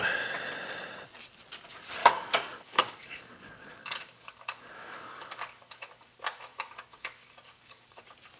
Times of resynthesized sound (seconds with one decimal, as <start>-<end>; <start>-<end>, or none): 2.0-6.1; 6.5-8.0